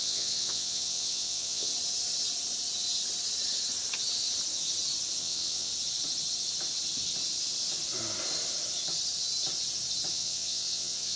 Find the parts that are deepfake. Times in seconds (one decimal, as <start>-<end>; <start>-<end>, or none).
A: 0.0-1.7; 5.2-5.7; 10.1-11.2